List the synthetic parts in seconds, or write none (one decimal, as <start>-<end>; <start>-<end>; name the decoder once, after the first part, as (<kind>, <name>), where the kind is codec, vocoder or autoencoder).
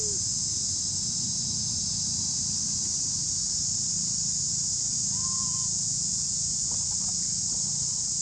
5.2-6.7 (vocoder, Vocos)